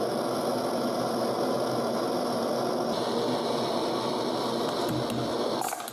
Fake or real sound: real